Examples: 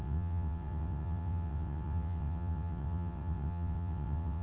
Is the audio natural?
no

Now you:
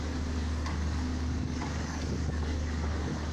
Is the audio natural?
no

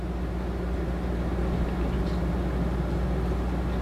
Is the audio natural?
yes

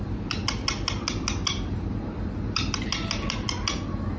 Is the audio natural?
yes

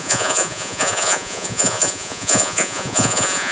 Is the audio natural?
no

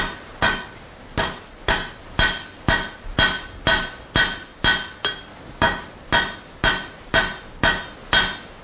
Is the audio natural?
yes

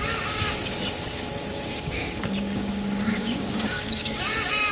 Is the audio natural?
no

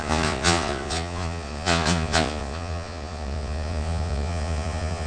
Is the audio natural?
no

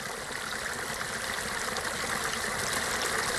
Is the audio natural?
yes